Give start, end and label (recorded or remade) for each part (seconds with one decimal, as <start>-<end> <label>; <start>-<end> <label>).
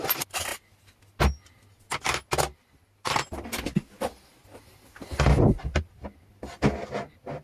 0.0-7.4 recorded